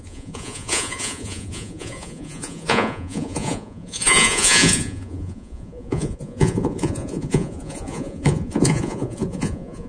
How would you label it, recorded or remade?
remade